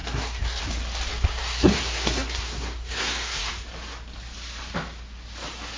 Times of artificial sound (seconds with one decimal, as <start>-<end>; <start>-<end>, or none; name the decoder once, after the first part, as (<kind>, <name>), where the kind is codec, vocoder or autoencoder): 0.0-0.6 (codec, SNAC); 1.1-3.5